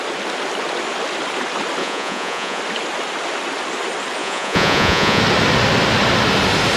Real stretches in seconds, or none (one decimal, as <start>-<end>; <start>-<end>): 0.0-1.8; 2.6-4.2; 5.2-6.8